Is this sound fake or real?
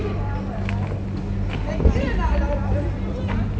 real